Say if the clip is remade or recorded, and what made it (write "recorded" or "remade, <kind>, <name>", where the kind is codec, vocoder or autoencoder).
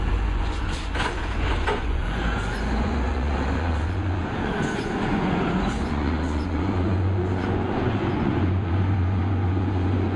remade, vocoder, Vocos